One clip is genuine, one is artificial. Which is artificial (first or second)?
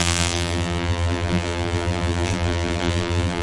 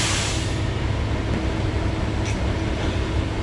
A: first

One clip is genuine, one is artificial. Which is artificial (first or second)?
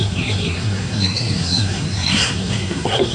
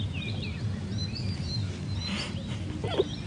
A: first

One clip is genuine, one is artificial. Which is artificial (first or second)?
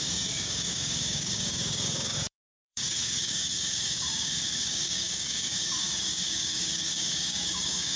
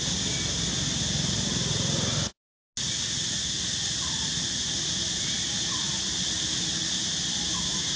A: first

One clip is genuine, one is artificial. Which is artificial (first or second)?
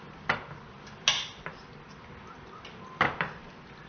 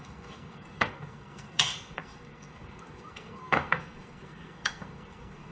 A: second